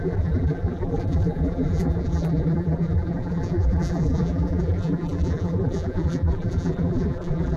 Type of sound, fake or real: fake